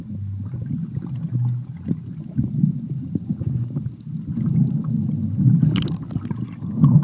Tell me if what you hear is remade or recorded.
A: recorded